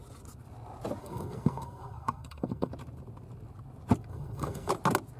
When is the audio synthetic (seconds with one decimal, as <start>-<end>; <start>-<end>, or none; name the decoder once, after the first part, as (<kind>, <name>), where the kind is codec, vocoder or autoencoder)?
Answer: 1.0-2.7 (codec, SNAC); 4.1-4.7